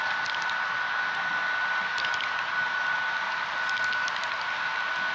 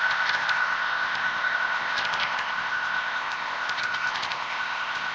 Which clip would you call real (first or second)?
first